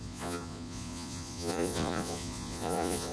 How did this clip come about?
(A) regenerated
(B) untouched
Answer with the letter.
A